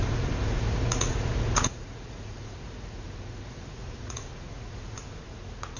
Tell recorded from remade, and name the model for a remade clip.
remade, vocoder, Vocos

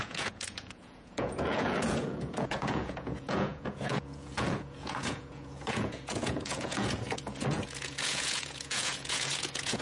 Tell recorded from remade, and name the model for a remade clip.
remade, vocoder, Vocos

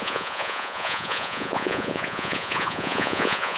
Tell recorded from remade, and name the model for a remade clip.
remade, vocoder, Vocos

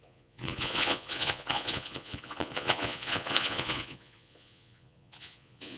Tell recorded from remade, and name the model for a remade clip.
remade, vocoder, Vocos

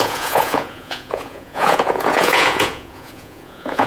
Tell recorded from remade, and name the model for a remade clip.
remade, vocoder, Vocos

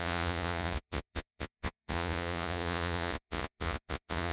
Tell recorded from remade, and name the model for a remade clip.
remade, vocoder, Vocos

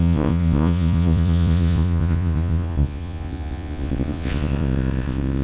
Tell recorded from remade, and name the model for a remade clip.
remade, vocoder, Vocos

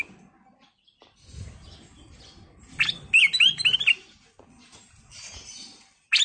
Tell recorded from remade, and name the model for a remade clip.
recorded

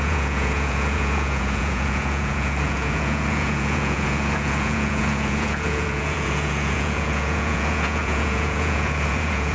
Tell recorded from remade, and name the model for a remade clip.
remade, vocoder, Vocos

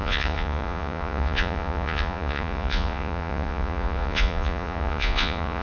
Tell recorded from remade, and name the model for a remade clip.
remade, vocoder, Vocos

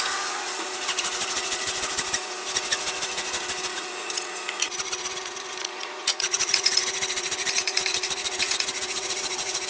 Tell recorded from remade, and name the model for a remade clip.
remade, vocoder, Vocos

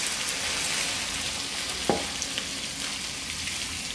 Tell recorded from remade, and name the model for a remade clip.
recorded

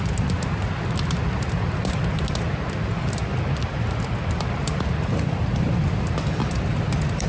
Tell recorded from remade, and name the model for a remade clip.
recorded